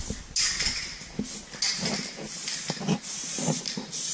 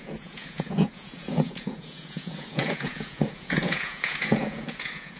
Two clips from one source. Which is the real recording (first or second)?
first